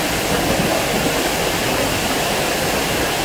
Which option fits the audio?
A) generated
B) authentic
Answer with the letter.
B